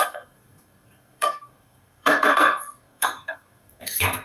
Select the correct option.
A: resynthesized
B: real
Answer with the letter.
A